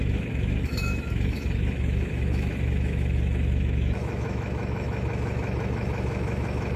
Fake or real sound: fake